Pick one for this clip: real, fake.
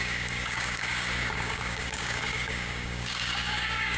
fake